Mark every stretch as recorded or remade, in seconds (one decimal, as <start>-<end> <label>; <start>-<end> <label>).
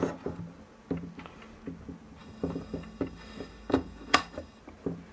0.0-2.2 recorded; 2.2-4.6 remade; 4.6-5.1 recorded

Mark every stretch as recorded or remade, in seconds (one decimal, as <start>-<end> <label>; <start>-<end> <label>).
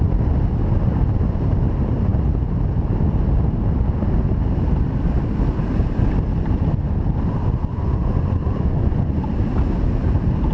0.0-7.7 recorded; 7.7-9.3 remade; 9.3-10.5 recorded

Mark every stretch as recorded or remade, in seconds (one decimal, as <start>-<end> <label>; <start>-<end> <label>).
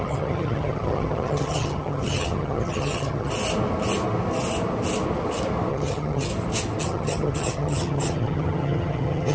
0.0-3.3 remade; 3.3-5.7 recorded; 5.7-6.3 remade; 6.3-6.8 recorded; 6.8-9.3 remade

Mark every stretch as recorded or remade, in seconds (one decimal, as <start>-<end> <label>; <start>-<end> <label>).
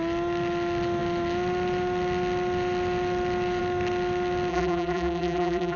0.0-4.5 recorded; 4.5-5.8 remade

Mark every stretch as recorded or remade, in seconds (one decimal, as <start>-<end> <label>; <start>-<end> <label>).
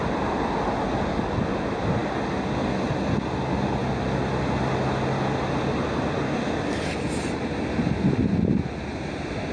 0.0-9.5 recorded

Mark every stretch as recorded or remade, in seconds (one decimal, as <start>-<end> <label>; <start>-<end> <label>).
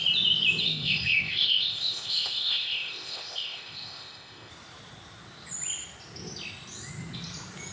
0.0-0.6 recorded; 0.6-4.5 remade; 4.5-7.7 recorded